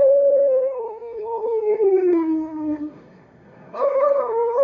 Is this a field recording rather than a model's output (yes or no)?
no